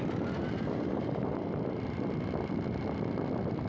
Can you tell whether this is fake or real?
real